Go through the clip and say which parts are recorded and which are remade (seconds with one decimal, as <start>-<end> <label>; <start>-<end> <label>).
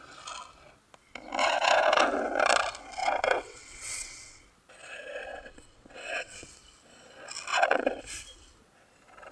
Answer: 0.0-1.4 recorded; 1.4-2.0 remade; 2.0-3.0 recorded; 3.0-4.4 remade; 4.4-5.3 recorded; 5.3-6.5 remade; 6.5-7.5 recorded; 7.5-8.0 remade; 8.0-9.3 recorded